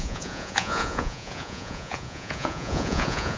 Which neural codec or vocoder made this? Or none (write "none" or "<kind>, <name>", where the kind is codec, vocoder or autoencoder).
vocoder, Vocos